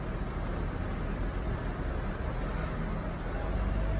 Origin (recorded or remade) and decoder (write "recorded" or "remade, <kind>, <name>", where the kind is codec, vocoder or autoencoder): recorded